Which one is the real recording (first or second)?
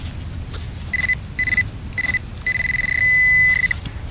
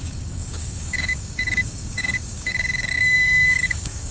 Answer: first